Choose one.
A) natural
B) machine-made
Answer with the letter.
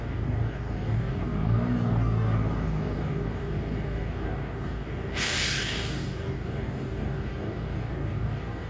B